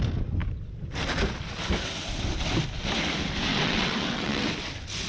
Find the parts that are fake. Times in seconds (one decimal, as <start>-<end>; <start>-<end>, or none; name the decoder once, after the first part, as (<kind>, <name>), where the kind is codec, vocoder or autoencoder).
3.5-4.5 (vocoder, WaveNeXt)